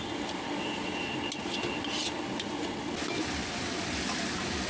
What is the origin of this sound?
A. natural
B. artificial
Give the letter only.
A